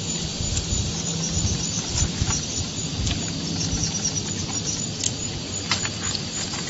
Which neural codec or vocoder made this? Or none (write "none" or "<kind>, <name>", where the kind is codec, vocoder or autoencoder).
none